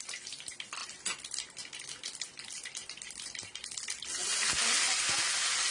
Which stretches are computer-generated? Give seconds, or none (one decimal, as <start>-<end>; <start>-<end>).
0.0-0.8; 4.2-5.7